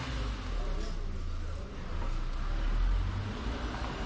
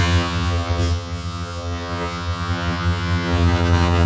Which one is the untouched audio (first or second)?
first